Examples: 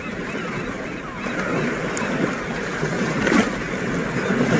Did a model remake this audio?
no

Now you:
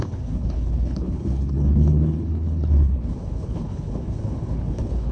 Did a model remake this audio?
yes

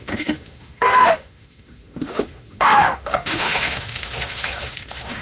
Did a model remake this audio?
yes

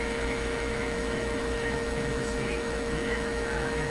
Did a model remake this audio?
yes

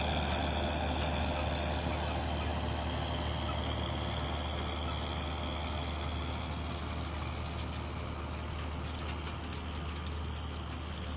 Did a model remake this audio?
no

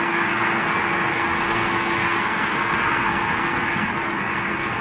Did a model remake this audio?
yes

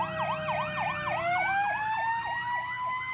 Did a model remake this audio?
no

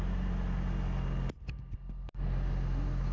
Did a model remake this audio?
no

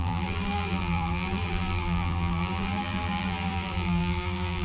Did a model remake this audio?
yes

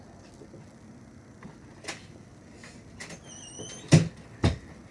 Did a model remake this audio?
no